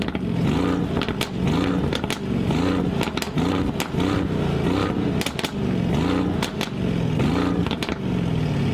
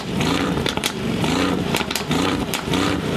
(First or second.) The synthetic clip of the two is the second